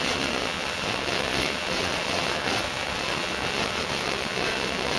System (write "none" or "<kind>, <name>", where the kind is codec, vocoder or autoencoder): vocoder, WaveNeXt